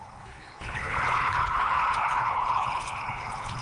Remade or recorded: remade